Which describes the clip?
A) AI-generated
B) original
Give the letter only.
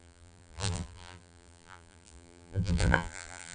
A